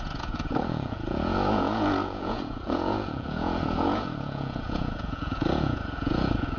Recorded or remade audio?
remade